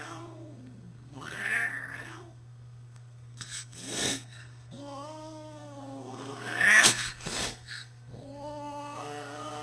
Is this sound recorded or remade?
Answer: remade